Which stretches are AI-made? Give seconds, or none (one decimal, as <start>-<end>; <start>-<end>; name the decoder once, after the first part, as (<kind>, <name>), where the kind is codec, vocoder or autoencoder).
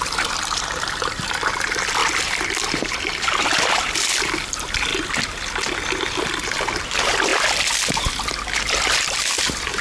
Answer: 0.0-2.0 (vocoder, BigVGAN v2); 2.7-4.9; 6.8-7.3; 9.0-9.8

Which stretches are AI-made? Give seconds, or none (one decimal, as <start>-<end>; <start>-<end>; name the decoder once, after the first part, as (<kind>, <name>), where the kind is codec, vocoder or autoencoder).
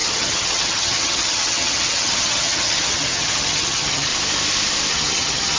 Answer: 0.0-4.1 (vocoder, HiFi-GAN); 4.9-5.6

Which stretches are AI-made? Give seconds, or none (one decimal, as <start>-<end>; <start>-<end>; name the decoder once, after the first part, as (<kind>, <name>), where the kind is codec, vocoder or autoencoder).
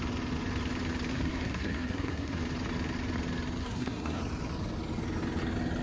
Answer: 1.1-2.4 (codec, SNAC); 3.6-4.2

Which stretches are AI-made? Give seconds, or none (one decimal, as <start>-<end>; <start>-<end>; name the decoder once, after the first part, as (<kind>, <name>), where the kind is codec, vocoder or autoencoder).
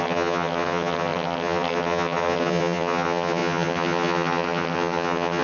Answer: 0.0-5.4 (vocoder, HiFi-GAN)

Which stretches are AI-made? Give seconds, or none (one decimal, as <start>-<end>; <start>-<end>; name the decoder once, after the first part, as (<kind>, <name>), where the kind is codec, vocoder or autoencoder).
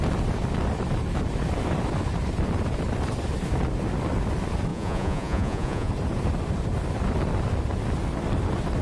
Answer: 4.7-5.9 (vocoder, Vocos)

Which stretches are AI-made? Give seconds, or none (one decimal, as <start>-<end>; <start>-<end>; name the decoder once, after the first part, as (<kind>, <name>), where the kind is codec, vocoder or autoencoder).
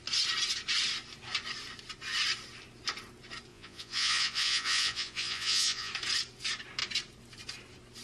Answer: 3.5-5.9 (vocoder, Vocos)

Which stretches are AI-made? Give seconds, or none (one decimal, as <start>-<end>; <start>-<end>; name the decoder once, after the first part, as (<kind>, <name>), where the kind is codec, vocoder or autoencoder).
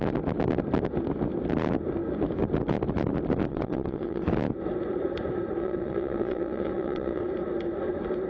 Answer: 3.5-4.2 (vocoder, WaveNeXt); 5.6-7.2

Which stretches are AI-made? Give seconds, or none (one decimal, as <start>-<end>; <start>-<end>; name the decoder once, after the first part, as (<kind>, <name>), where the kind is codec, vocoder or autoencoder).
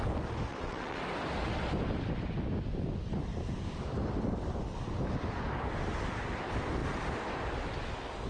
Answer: 0.5-1.0 (vocoder, WaveNeXt)